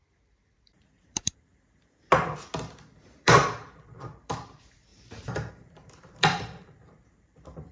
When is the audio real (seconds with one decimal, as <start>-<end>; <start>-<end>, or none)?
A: 1.5-3.2